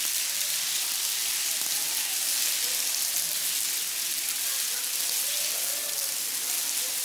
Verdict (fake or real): real